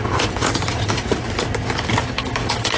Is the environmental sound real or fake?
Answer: real